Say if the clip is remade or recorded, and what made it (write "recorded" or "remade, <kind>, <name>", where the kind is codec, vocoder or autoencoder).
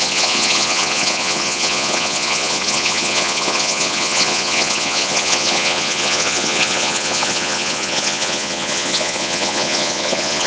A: remade, vocoder, Vocos